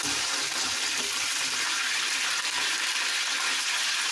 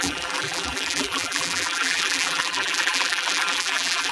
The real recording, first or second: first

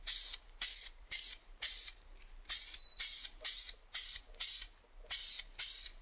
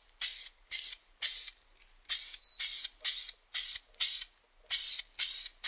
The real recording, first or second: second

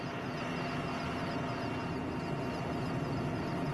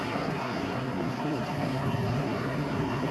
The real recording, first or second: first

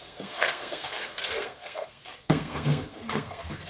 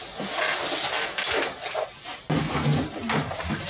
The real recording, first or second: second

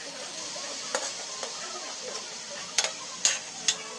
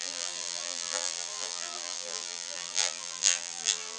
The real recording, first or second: first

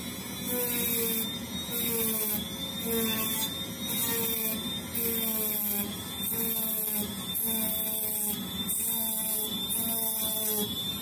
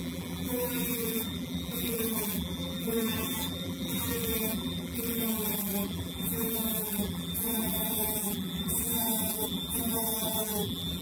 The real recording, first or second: first